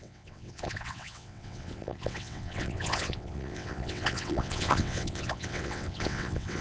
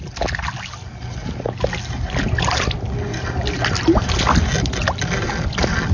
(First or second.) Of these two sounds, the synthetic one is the first